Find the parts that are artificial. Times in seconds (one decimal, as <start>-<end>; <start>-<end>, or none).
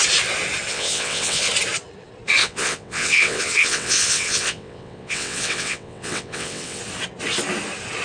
0.7-1.5; 2.4-6.8